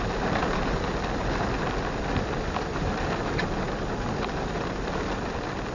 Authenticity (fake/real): real